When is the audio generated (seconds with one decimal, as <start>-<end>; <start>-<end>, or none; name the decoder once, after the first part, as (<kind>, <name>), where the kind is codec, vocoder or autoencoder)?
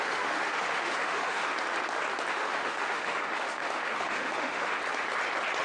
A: 0.0-1.5 (autoencoder, DAC-VAE); 2.3-4.8